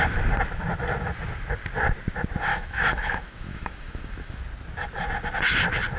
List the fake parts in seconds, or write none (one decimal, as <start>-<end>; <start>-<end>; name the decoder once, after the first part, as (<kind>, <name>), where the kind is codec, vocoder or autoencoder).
2.5-4.4 (autoencoder, DAC-VAE)